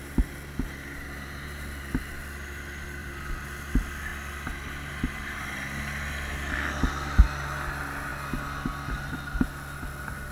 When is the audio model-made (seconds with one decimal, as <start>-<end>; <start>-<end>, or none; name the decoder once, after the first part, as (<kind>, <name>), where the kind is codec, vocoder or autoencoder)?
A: 3.0-3.6 (vocoder, BigVGAN v2)